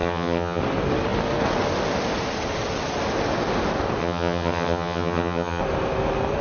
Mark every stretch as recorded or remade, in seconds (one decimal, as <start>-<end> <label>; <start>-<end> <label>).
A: 0.0-0.6 remade; 0.6-4.0 recorded; 4.0-5.6 remade; 5.6-6.4 recorded